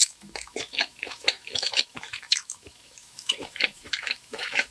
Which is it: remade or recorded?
remade